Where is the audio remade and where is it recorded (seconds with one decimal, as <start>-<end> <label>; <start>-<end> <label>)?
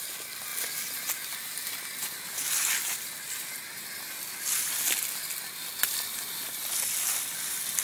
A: 0.0-7.8 recorded